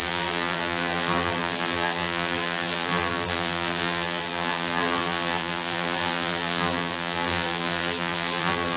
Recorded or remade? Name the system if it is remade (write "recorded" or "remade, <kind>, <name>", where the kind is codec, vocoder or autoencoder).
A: remade, vocoder, BigVGAN v2